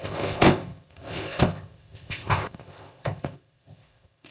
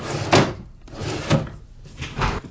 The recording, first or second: second